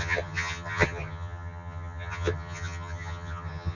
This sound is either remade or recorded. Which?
remade